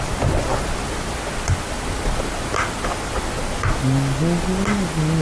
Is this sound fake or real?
real